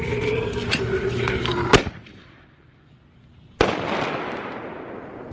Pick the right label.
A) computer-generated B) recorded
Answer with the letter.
B